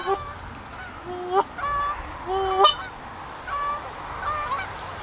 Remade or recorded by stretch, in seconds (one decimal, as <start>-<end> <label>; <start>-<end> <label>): 0.0-5.0 recorded

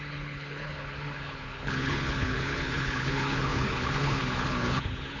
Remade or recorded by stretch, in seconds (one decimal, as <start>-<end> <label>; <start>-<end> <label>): 0.0-5.2 remade

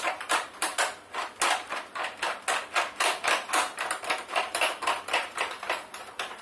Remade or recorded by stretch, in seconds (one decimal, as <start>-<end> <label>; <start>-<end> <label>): 0.0-0.7 remade; 0.7-4.4 recorded; 4.4-6.4 remade

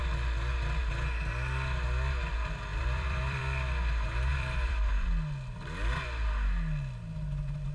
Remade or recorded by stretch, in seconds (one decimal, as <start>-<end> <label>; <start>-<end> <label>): 0.0-2.7 recorded; 2.7-3.4 remade; 3.4-4.3 recorded; 4.3-4.9 remade; 4.9-7.7 recorded

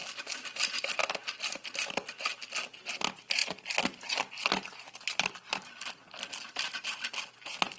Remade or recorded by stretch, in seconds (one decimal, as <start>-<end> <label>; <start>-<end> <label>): 0.0-7.8 recorded